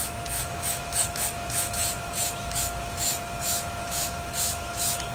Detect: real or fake fake